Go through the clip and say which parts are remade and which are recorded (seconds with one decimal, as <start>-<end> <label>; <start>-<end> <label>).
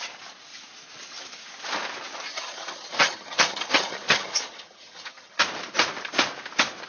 0.0-2.3 recorded; 2.3-5.4 remade; 5.4-6.9 recorded